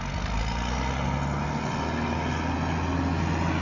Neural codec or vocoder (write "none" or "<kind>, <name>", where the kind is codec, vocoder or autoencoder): none